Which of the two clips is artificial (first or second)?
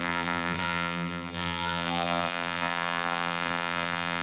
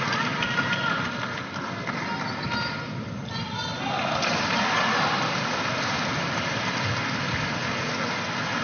first